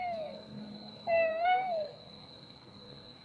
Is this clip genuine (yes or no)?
no